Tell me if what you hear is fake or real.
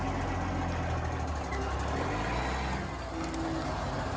real